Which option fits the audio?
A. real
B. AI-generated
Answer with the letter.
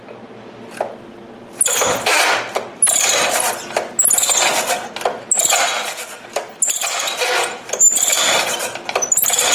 A